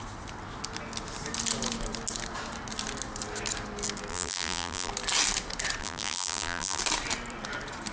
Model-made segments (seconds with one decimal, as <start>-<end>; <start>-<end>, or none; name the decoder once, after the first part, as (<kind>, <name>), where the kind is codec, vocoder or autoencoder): 4.1-4.9 (vocoder, BigVGAN v2); 5.8-6.8